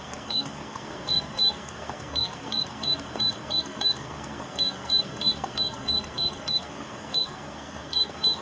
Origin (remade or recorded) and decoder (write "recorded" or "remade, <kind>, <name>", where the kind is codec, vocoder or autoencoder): remade, codec, SNAC